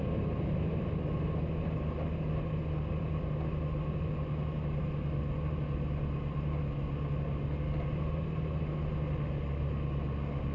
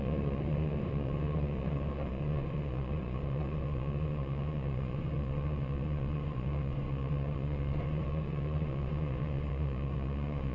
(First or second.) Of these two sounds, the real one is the first